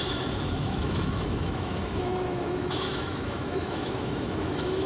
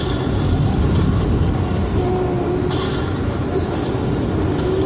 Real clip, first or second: second